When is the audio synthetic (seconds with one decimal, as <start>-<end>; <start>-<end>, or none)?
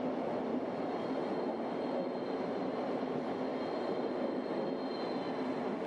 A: none